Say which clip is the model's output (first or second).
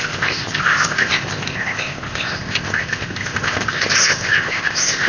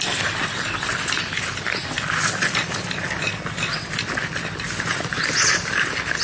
first